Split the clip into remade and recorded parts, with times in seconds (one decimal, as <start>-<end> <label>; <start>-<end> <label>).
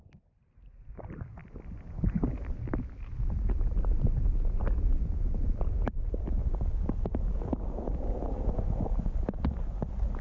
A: 0.0-10.2 recorded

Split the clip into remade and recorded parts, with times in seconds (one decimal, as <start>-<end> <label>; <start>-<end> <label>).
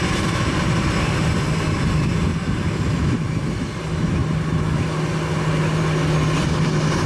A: 0.0-2.3 recorded; 2.3-3.8 remade; 3.8-7.1 recorded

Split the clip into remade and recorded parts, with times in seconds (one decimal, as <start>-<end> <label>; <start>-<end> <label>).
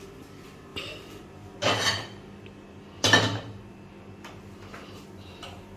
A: 0.0-5.8 recorded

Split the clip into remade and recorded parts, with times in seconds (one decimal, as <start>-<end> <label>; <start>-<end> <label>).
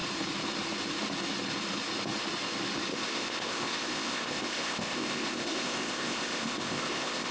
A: 0.0-2.9 recorded; 2.9-7.3 remade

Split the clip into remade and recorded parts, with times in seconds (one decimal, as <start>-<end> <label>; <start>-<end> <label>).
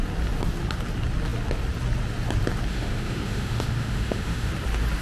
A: 0.0-2.7 recorded; 2.7-4.5 remade; 4.5-5.0 recorded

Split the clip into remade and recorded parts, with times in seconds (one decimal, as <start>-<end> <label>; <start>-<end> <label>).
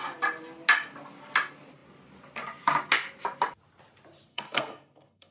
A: 0.0-4.3 recorded; 4.3-5.3 remade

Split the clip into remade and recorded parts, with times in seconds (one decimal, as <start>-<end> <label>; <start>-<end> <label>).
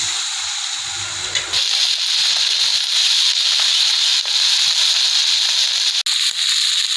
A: 0.0-2.7 recorded; 2.7-4.9 remade; 4.9-7.0 recorded